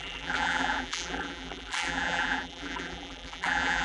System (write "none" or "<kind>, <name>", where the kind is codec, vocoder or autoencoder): vocoder, BigVGAN v2